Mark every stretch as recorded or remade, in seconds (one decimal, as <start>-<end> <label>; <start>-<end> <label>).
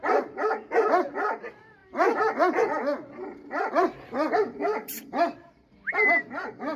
0.0-6.8 recorded